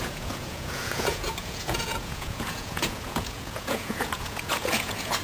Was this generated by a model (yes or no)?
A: yes